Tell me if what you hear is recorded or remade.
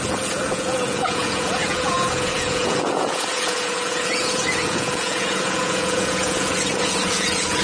remade